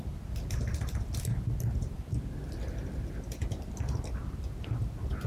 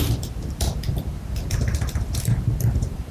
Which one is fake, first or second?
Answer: second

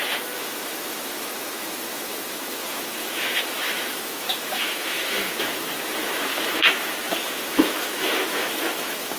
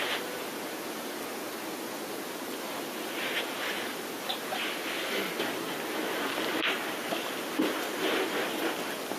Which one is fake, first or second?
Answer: first